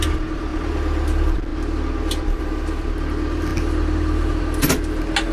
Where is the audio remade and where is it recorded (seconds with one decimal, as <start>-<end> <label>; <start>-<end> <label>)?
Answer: 0.0-5.3 recorded